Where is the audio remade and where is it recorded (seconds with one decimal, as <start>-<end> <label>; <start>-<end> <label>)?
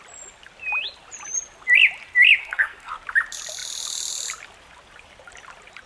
0.0-2.4 recorded; 2.4-2.9 remade; 2.9-5.9 recorded